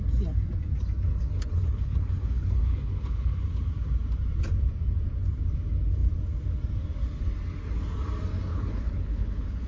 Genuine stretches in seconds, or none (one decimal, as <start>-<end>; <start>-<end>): 0.0-1.1; 3.4-8.5